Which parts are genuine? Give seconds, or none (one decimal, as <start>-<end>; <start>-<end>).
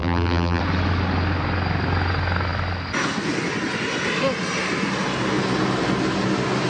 0.6-6.7